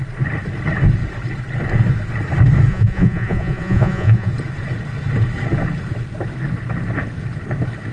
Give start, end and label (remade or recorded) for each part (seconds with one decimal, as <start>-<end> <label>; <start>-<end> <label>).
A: 0.0-2.7 recorded; 2.7-4.3 remade; 4.3-7.9 recorded